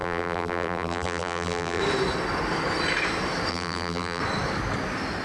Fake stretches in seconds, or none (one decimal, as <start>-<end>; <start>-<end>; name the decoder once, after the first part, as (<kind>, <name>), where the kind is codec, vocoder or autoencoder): 0.0-1.8 (vocoder, BigVGAN v2); 3.5-4.2